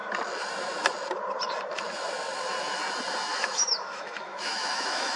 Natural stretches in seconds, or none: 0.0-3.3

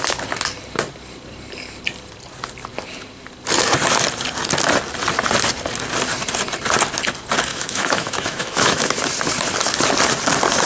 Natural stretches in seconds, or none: 0.0-7.5; 9.0-10.7

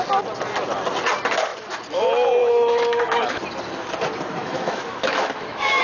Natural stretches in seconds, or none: 0.0-2.4; 3.4-4.4

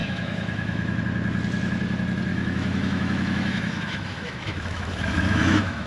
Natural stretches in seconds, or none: 1.0-2.3

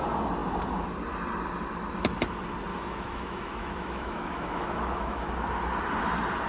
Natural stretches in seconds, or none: 0.0-2.7; 5.3-6.5

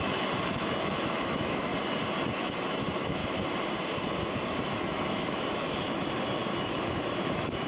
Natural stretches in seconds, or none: 1.7-2.3; 3.2-4.7